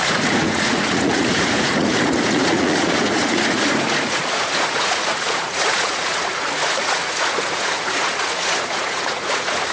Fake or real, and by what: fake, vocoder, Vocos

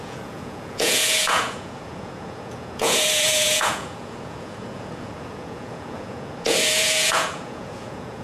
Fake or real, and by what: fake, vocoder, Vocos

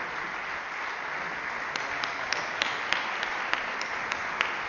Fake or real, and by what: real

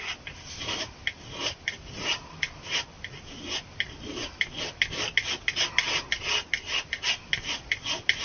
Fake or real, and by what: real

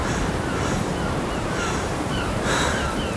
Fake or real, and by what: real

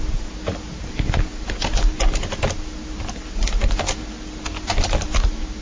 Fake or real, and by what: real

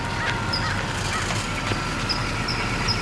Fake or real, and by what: real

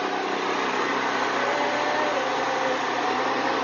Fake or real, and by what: real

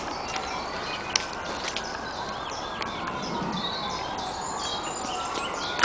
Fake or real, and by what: real